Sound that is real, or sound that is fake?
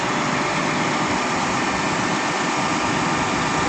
real